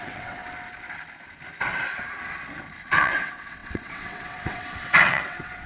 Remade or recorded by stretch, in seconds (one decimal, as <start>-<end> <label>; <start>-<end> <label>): 0.0-0.4 remade; 0.4-2.9 recorded; 2.9-5.7 remade